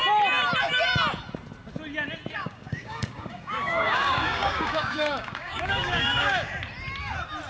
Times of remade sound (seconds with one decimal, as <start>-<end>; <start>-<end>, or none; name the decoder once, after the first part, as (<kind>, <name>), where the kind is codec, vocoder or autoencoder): 2.4-6.5 (codec, DAC)